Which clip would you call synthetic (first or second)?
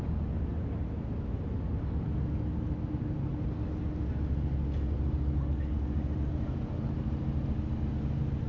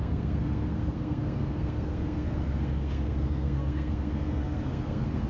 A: second